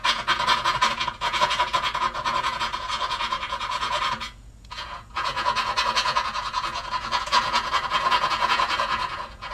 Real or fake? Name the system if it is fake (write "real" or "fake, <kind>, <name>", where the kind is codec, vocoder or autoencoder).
fake, vocoder, Vocos